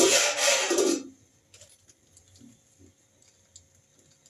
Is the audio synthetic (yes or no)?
no